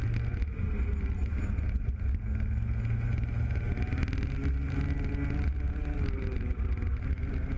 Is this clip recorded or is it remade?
recorded